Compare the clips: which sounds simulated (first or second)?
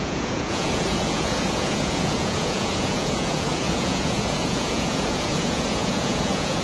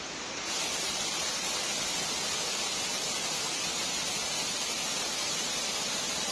first